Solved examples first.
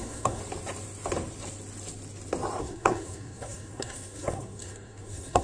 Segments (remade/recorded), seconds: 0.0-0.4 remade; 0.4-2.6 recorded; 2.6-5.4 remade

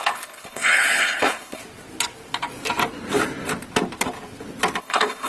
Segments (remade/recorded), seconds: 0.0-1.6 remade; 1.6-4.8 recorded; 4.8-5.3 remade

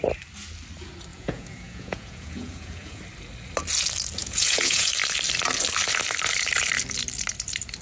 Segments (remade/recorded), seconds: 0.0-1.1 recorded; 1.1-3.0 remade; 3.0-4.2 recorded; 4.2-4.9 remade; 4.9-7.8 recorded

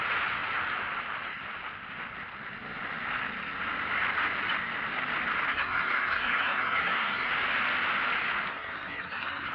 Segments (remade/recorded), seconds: 0.0-5.5 recorded; 5.5-7.3 remade; 7.3-8.5 recorded; 8.5-9.5 remade

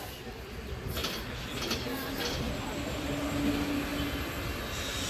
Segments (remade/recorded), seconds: 0.0-5.1 recorded

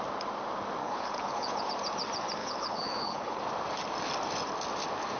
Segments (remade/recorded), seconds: 0.0-0.8 recorded; 0.8-1.7 remade; 1.7-2.4 recorded; 2.4-3.4 remade; 3.4-5.2 recorded